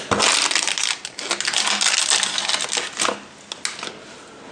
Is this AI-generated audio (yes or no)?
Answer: no